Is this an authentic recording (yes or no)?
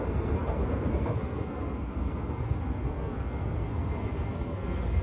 no